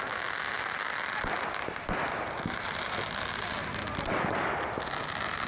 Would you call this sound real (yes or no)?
yes